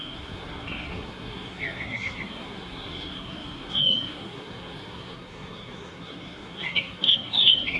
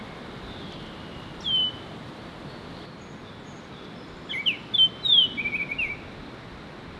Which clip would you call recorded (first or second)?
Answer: second